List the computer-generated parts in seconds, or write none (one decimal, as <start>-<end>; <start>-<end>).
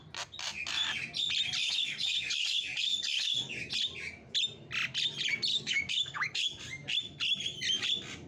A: 1.6-3.7; 5.5-6.6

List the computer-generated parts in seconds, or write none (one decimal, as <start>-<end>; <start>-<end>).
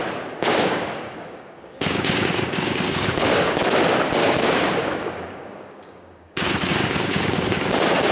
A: 0.4-3.6; 4.2-8.1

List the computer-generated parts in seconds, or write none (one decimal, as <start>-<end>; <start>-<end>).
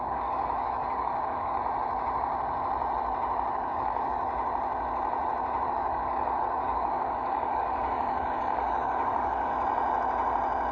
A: 0.0-1.6; 3.5-4.3; 5.7-9.5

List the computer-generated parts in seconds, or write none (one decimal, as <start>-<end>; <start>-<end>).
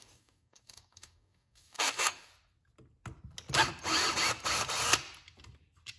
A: 0.0-2.3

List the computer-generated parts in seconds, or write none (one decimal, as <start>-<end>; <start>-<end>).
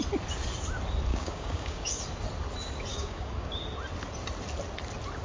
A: 1.1-2.0; 2.9-3.6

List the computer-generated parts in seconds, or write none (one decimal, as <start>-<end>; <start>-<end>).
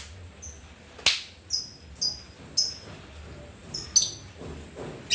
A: none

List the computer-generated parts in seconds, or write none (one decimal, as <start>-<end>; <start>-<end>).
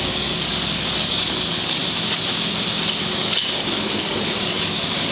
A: 0.0-1.8; 3.0-5.1